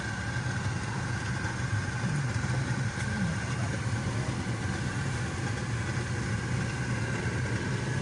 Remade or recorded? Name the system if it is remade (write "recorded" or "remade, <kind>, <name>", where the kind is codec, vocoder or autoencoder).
recorded